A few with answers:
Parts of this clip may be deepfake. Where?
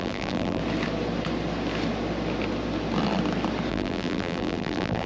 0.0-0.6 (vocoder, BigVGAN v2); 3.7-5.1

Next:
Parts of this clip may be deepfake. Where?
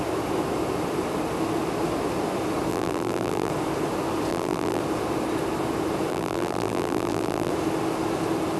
2.7-3.5 (vocoder, BigVGAN v2); 4.3-4.8; 6.1-7.5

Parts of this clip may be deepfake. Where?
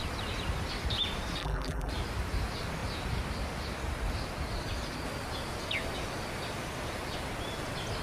1.4-1.9 (vocoder, BigVGAN v2)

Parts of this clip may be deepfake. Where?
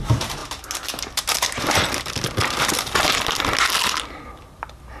none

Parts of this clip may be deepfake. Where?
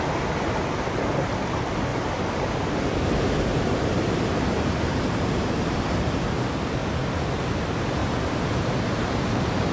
1.9-2.5 (vocoder, BigVGAN v2); 3.5-6.3; 8.0-9.7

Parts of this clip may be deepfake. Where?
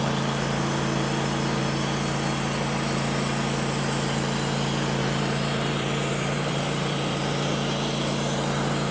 5.0-7.5 (vocoder, BigVGAN v2)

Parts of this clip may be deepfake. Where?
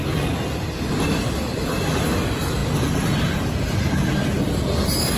none